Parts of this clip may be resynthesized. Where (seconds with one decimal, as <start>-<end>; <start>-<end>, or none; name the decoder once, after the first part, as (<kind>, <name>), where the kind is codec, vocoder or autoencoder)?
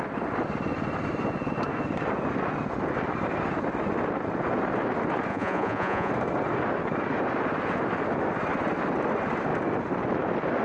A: 5.3-6.1 (vocoder, Vocos)